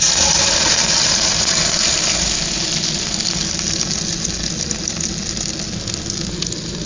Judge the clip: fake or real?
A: real